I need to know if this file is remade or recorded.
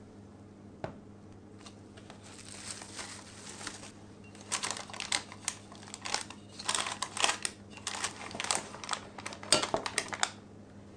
recorded